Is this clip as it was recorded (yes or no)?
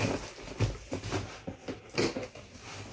yes